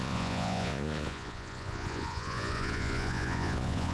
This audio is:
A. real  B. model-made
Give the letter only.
B